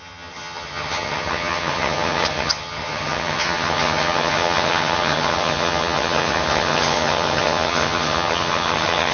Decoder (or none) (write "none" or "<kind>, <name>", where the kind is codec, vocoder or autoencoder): vocoder, HiFi-GAN